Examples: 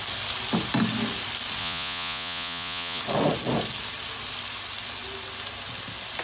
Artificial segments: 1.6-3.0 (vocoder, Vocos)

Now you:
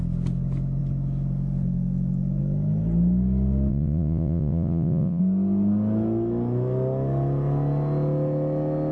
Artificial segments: 3.7-5.2 (vocoder, Vocos)

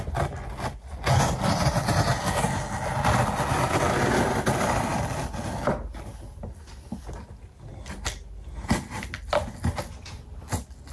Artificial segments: none

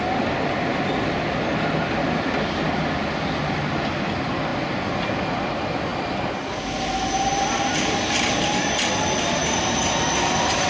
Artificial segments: 9.4-10.7 (vocoder, BigVGAN v2)

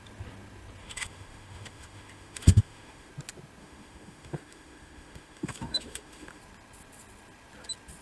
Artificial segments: 0.8-3.1 (autoencoder, DAC-VAE); 3.6-6.4

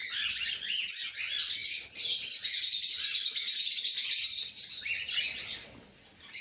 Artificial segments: none

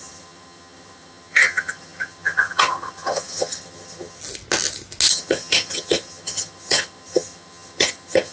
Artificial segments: 0.0-4.2 (vocoder, HiFi-GAN); 5.1-8.3

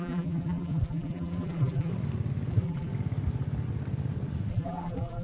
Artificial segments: 0.0-1.9 (vocoder, BigVGAN v2); 2.5-2.9; 4.5-5.2